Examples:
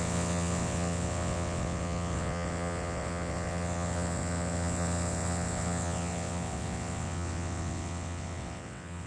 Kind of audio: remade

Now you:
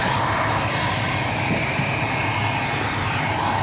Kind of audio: recorded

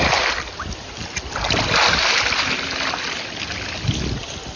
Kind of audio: recorded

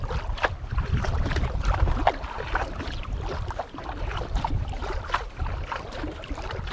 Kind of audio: remade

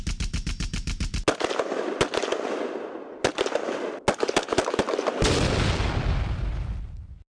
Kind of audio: recorded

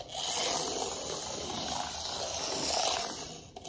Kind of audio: recorded